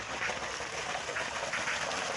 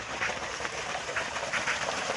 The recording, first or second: first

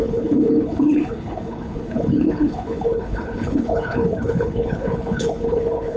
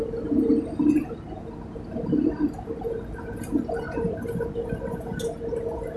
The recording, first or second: second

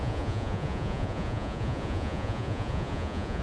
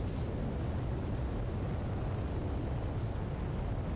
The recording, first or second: second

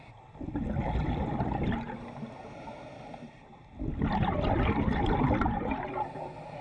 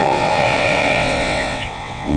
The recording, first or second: first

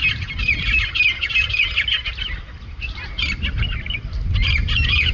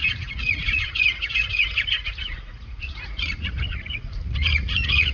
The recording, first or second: first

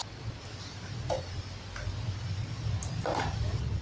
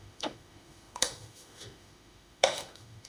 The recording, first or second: first